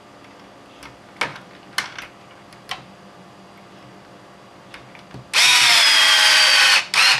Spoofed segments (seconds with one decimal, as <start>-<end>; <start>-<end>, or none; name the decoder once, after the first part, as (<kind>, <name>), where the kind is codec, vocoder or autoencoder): 5.5-6.8 (vocoder, BigVGAN v2)